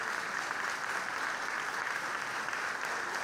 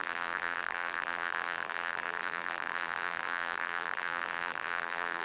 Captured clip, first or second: first